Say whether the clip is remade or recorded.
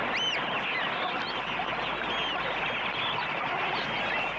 recorded